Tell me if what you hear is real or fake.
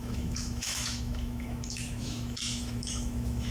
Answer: fake